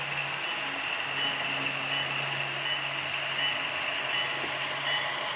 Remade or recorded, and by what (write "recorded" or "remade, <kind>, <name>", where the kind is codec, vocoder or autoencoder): recorded